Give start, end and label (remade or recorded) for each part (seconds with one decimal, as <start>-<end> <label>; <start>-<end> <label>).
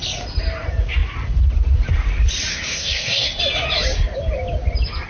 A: 0.0-2.5 recorded; 2.5-3.4 remade; 3.4-5.1 recorded